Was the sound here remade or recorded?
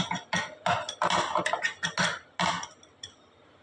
recorded